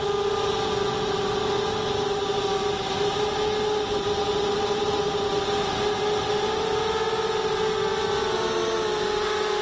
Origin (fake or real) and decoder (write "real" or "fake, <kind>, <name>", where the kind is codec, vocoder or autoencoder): real